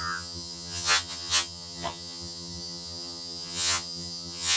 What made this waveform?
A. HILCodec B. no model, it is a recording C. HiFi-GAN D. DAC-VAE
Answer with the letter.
C